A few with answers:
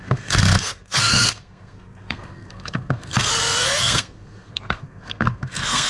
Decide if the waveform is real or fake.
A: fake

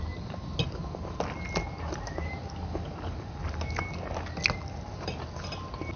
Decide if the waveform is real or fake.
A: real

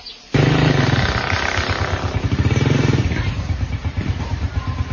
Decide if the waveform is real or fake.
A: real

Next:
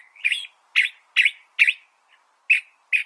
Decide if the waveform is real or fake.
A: real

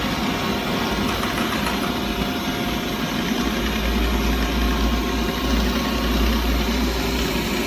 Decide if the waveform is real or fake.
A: real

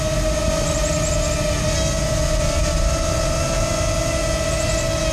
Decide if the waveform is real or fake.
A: real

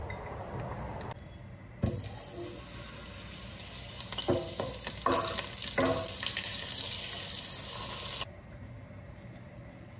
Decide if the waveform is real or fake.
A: real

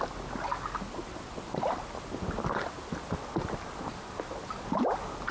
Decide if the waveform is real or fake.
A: real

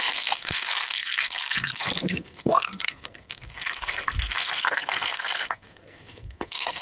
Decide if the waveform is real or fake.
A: fake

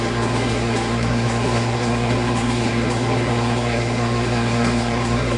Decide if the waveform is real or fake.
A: fake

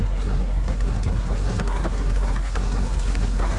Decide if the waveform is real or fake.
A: fake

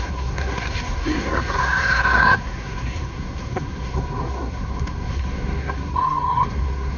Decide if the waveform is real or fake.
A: fake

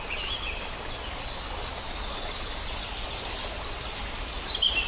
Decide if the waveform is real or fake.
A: real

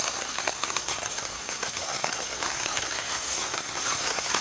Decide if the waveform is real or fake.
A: fake